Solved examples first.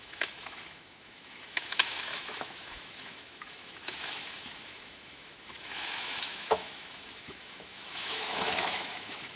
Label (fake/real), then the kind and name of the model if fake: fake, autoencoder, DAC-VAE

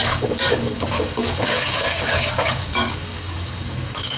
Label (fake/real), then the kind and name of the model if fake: fake, codec, DAC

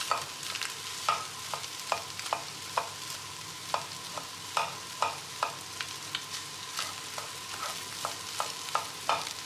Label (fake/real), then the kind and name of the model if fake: real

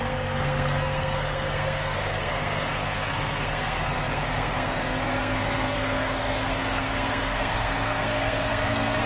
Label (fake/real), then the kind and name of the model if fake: fake, codec, SNAC